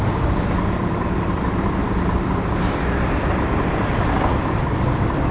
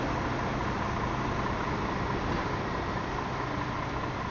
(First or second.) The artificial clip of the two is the first